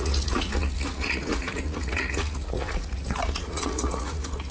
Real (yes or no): no